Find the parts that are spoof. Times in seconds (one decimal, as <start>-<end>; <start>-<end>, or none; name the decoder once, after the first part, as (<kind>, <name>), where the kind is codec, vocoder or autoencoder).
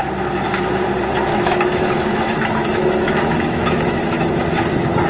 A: 1.3-4.4 (autoencoder, DAC-VAE)